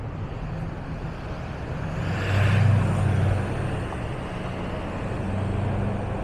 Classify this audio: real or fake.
real